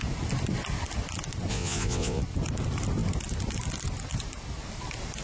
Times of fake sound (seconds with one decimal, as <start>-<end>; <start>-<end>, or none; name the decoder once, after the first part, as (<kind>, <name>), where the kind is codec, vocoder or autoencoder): 1.5-2.2 (vocoder, Vocos)